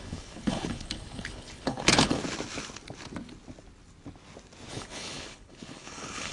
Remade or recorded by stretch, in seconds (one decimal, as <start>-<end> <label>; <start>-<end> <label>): 0.0-2.2 remade; 2.2-4.7 recorded; 4.7-6.3 remade